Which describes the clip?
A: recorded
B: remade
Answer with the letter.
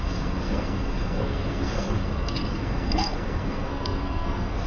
B